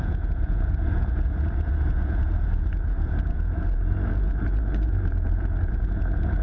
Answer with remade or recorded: remade